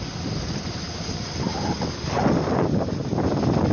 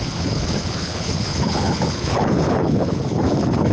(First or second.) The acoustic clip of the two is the first